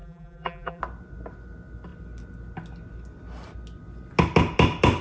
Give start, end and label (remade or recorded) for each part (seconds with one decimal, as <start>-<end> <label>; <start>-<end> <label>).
0.0-0.8 remade; 0.8-5.0 recorded